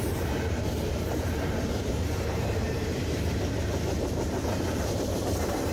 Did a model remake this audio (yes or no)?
yes